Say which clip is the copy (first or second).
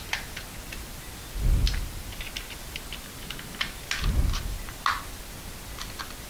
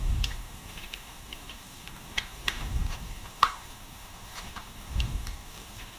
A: second